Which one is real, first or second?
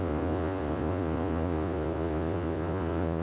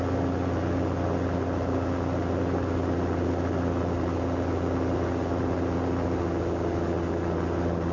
second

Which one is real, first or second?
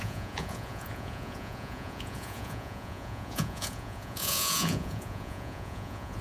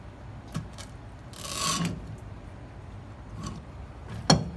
second